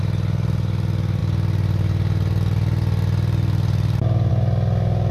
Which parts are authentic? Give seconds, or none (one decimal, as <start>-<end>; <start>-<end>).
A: 0.0-5.1